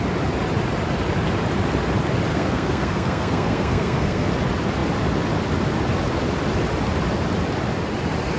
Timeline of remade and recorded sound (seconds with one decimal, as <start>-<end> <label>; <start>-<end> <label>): 0.0-2.3 recorded; 2.3-4.3 remade; 4.3-8.4 recorded